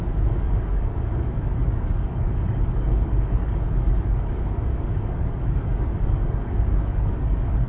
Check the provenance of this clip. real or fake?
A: fake